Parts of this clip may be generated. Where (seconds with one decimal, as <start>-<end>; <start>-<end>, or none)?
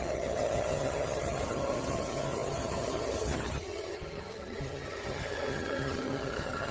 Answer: 0.0-6.7